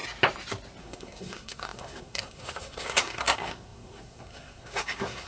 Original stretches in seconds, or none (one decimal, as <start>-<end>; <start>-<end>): 0.0-0.8